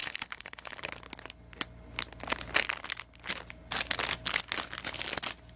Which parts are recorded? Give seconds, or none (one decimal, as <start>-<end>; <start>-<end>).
0.9-5.6